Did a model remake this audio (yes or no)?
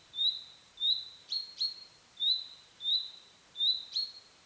yes